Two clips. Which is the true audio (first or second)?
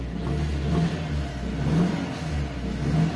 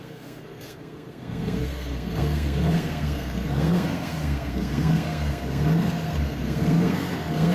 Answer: first